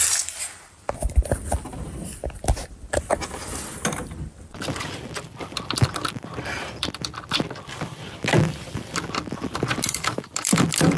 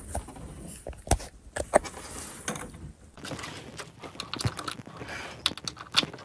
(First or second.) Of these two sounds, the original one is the second